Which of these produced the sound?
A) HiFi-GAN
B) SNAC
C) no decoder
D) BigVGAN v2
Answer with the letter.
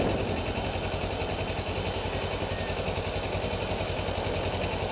C